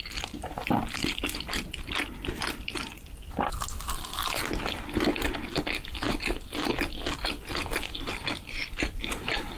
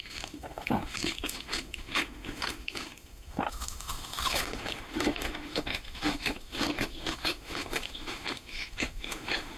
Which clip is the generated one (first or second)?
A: second